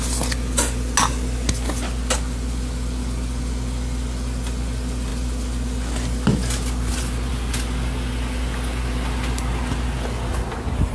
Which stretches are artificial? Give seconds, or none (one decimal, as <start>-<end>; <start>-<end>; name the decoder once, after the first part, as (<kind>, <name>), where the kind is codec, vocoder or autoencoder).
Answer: none